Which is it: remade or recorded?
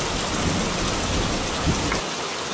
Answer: recorded